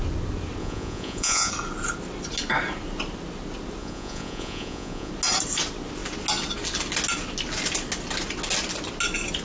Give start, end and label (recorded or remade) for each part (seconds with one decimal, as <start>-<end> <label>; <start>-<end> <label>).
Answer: 0.0-0.6 recorded; 0.6-1.5 remade; 1.5-3.8 recorded; 3.8-5.1 remade; 5.1-9.4 recorded